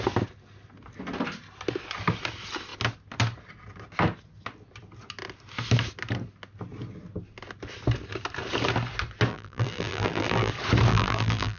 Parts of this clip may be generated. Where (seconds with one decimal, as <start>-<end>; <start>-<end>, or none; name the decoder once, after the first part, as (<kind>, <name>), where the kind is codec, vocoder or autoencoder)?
9.3-10.5 (vocoder, BigVGAN v2); 10.9-11.6